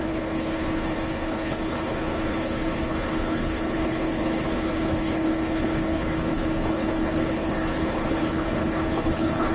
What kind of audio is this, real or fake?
fake